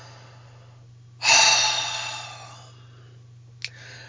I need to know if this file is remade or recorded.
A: recorded